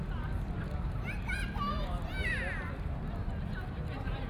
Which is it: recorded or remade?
recorded